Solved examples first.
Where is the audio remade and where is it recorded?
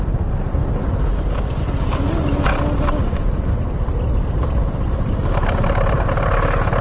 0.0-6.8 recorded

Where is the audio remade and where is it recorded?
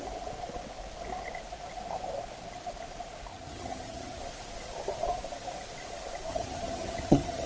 0.0-3.3 recorded; 3.3-4.2 remade; 4.2-6.3 recorded; 6.3-7.5 remade